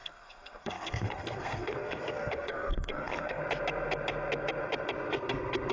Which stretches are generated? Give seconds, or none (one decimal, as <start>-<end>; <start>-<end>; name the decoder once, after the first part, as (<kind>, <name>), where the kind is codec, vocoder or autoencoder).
0.0-3.4 (codec, SNAC)